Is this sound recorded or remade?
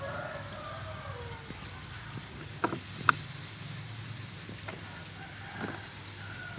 recorded